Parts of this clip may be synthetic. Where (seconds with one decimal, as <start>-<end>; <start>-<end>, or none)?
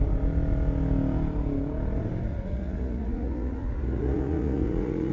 2.3-5.1